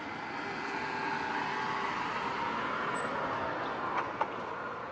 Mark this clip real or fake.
real